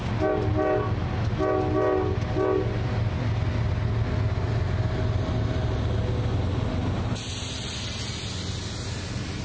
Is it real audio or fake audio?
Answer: real